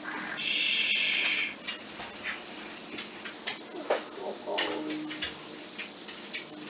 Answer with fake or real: real